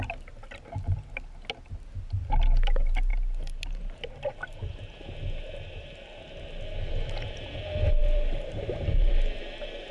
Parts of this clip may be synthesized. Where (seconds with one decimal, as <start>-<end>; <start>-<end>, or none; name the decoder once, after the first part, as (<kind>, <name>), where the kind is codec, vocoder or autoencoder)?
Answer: 8.0-9.4 (vocoder, BigVGAN v2)